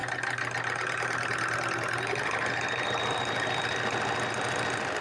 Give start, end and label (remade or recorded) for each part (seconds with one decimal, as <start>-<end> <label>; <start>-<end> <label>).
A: 0.0-5.0 recorded